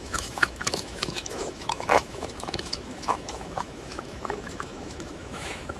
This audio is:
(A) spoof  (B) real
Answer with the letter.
A